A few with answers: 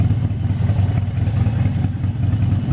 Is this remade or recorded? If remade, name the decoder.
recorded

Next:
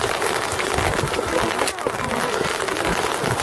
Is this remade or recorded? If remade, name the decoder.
recorded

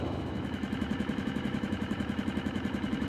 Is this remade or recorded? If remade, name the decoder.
remade, autoencoder, DAC-VAE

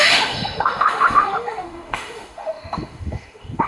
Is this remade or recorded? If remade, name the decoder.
remade, autoencoder, DAC-VAE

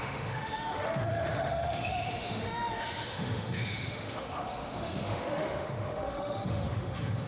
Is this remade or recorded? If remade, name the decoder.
remade, autoencoder, DAC-VAE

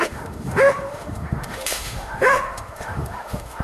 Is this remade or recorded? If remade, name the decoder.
remade, autoencoder, DAC-VAE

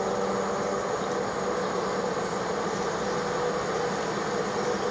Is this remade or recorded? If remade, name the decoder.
recorded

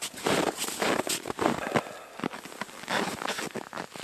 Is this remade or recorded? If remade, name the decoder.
recorded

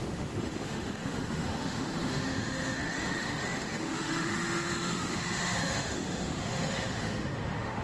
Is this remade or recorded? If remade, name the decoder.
remade, autoencoder, DAC-VAE